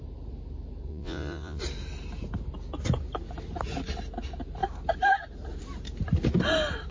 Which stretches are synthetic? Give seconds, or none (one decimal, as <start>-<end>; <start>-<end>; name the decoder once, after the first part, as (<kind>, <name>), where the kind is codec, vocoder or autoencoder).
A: 0.9-1.6 (vocoder, Vocos)